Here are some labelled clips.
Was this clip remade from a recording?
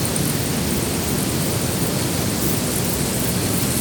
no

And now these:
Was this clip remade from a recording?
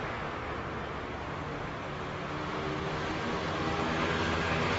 no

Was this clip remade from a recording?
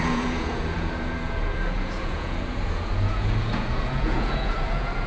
yes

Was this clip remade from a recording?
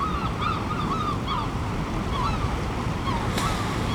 no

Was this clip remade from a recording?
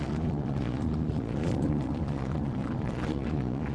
yes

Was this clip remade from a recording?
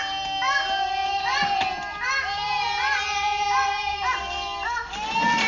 no